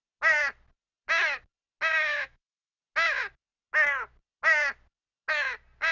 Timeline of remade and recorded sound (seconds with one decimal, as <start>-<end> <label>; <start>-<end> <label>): 0.0-1.9 recorded; 1.9-2.8 remade; 2.8-5.9 recorded